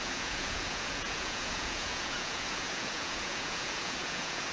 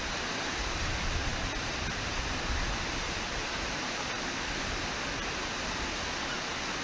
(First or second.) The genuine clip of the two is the second